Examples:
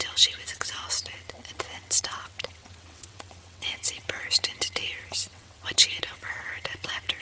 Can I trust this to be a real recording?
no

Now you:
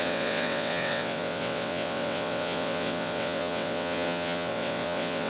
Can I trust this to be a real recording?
no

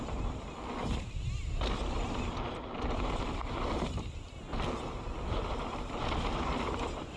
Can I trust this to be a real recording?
yes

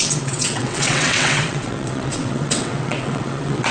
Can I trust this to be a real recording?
no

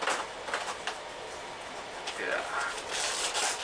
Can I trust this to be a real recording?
yes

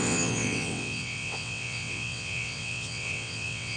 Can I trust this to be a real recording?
no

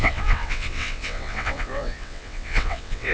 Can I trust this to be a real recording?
no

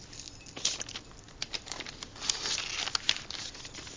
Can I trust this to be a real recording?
yes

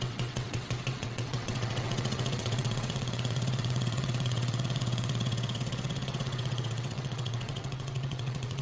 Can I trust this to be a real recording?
no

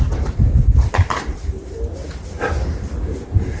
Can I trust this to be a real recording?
yes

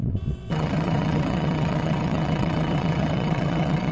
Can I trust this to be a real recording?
no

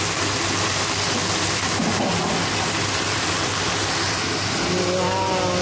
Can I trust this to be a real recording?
yes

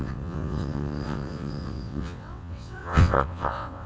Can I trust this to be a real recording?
no